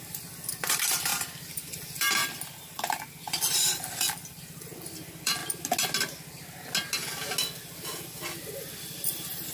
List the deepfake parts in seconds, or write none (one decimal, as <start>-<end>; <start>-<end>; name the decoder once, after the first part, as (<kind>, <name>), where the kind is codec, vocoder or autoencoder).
0.0-1.1 (vocoder, BigVGAN v2); 1.7-5.4; 8.8-9.5